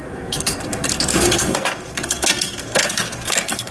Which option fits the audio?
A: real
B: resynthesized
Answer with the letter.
B